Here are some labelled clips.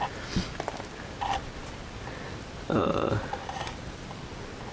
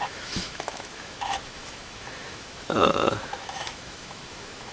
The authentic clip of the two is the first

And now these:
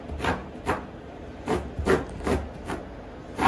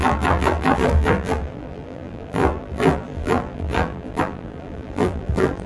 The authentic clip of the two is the first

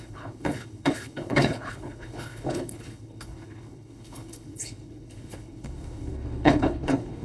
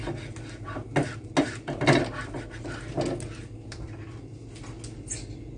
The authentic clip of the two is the second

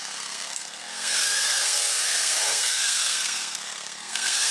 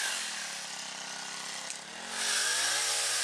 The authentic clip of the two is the second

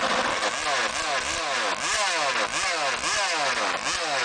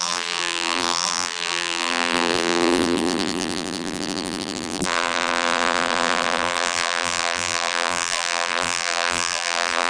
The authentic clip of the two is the first